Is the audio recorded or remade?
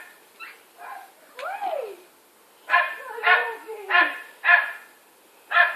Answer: recorded